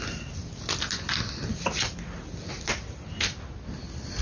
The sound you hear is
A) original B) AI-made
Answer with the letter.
A